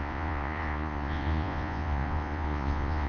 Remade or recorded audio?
remade